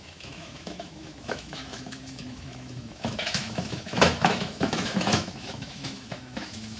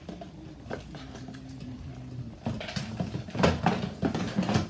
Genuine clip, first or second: second